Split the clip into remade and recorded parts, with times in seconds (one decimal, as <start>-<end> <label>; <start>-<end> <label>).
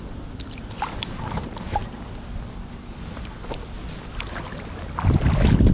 0.0-5.7 recorded